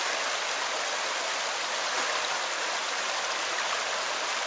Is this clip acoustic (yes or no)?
yes